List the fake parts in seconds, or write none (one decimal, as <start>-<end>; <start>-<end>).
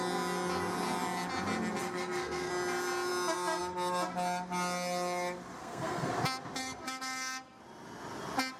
1.8-2.5; 5.6-6.1; 6.6-7.6